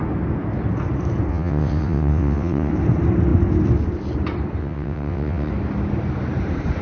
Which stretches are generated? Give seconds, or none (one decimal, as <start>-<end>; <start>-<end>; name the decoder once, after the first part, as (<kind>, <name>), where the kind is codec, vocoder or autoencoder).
1.3-2.7 (vocoder, WaveNeXt); 4.6-5.5